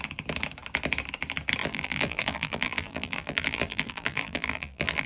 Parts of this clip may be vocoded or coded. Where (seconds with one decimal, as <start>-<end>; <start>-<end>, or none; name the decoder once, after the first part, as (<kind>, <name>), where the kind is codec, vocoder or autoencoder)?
1.6-5.1 (vocoder, BigVGAN v2)